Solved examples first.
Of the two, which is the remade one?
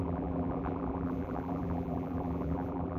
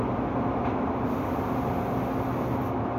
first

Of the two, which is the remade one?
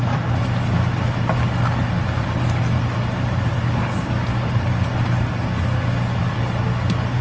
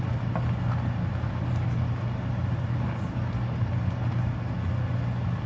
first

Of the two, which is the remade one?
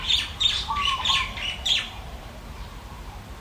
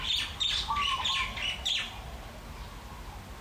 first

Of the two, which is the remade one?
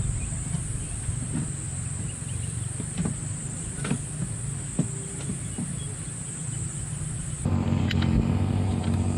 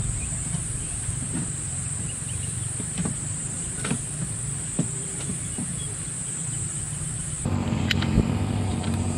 second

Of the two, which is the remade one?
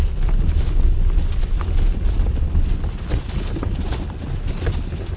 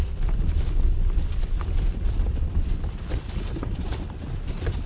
second